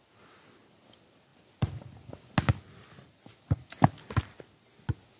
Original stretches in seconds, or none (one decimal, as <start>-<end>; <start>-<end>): 0.0-5.2